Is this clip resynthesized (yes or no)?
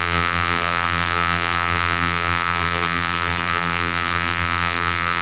yes